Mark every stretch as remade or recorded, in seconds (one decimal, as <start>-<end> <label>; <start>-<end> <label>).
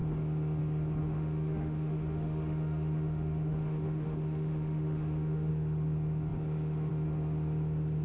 0.0-1.0 recorded; 1.0-5.5 remade; 5.5-8.0 recorded